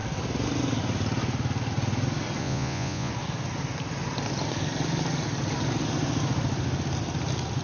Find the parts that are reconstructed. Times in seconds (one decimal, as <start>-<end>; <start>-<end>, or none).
2.4-3.1